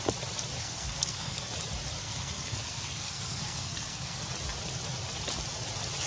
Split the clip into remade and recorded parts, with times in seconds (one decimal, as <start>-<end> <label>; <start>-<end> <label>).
0.0-0.6 recorded; 0.6-1.4 remade; 1.4-2.0 recorded; 2.0-4.3 remade; 4.3-6.1 recorded

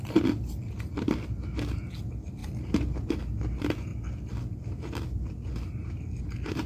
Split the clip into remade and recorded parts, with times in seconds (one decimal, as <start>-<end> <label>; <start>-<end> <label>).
0.0-2.4 recorded; 2.4-3.1 remade; 3.1-6.7 recorded

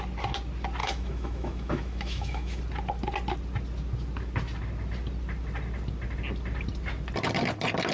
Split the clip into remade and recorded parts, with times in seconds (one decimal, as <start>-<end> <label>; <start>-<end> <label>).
0.0-0.8 recorded; 0.8-2.6 remade; 2.6-7.9 recorded

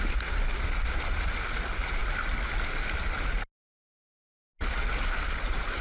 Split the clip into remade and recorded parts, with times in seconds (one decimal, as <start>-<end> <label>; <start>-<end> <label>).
0.0-5.8 recorded

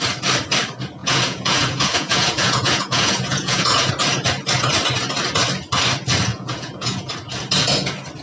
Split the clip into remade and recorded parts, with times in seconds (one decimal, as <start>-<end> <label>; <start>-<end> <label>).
0.0-1.0 recorded; 1.0-3.9 remade; 3.9-6.3 recorded; 6.3-7.1 remade; 7.1-8.2 recorded

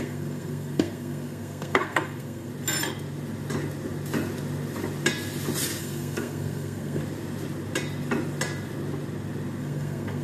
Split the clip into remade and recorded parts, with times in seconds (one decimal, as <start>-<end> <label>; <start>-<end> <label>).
0.0-2.5 remade; 2.5-5.8 recorded; 5.8-7.0 remade; 7.0-9.6 recorded; 9.6-10.2 remade

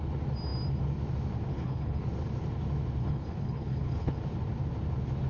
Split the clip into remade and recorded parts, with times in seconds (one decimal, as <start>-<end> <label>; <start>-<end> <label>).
0.0-1.5 recorded; 1.5-2.0 remade; 2.0-3.0 recorded; 3.0-4.2 remade; 4.2-5.3 recorded

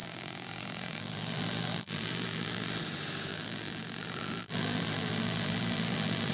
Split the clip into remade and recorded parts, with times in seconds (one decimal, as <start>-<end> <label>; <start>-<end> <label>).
0.0-2.8 remade; 2.8-3.3 recorded; 3.3-6.3 remade